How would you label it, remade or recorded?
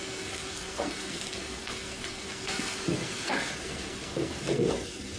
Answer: remade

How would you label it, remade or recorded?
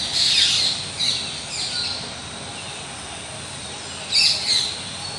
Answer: recorded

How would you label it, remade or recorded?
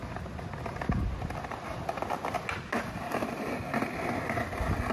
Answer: recorded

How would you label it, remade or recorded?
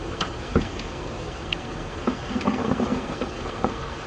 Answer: remade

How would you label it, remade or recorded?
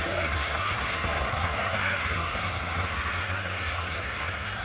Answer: remade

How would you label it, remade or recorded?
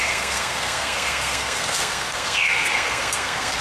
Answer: remade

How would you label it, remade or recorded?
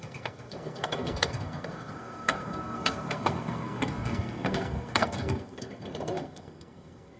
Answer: remade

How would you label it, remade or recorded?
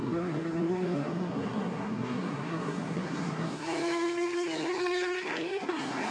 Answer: remade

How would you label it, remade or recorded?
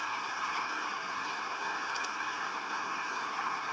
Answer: remade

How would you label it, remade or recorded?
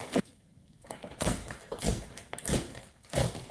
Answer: remade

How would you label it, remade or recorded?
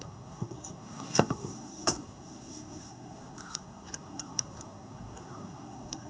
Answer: remade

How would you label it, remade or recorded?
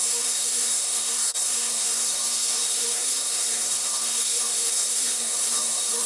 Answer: remade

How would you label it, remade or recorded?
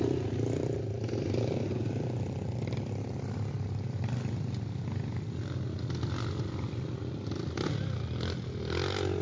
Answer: recorded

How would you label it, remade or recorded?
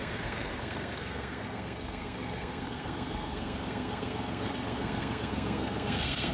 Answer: remade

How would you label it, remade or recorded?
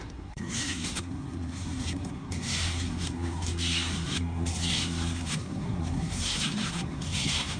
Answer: remade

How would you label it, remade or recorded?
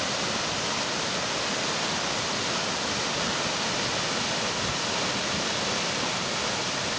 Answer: recorded